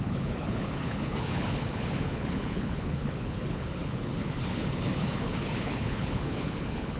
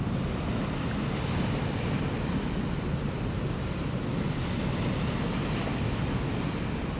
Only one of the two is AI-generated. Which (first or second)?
first